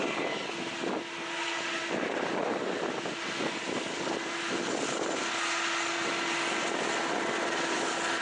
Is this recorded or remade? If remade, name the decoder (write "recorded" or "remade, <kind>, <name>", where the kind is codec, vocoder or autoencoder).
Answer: recorded